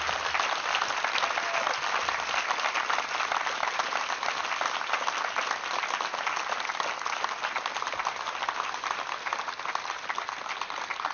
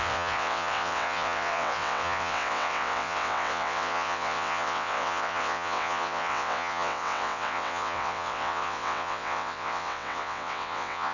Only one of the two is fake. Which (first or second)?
second